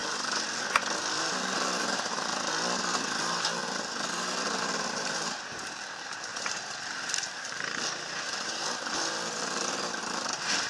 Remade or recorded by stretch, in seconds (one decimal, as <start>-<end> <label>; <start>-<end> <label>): 0.0-1.2 recorded; 1.2-2.3 remade; 2.3-3.2 recorded; 3.2-6.3 remade; 6.3-7.1 recorded; 7.1-10.7 remade